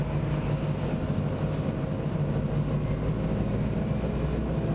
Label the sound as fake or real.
real